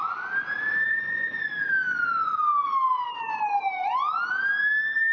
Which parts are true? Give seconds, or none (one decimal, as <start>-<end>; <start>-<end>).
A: 0.0-0.9; 1.5-5.1